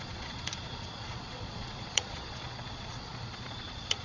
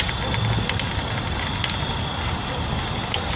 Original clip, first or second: second